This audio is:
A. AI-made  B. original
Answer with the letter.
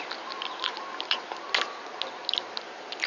B